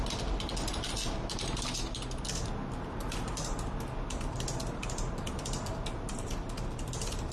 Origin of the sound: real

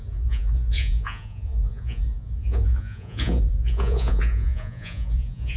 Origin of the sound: fake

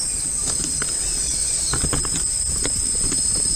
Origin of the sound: real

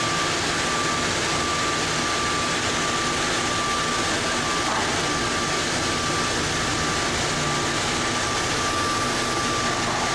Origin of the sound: real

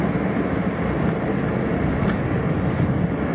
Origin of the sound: real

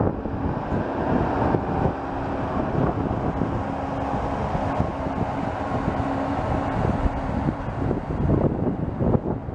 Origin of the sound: real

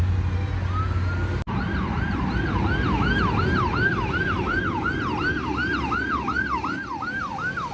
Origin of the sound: real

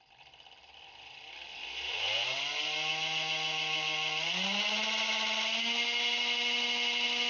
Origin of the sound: real